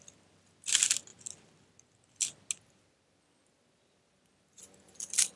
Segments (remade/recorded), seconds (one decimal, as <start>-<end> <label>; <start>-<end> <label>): 0.0-5.4 recorded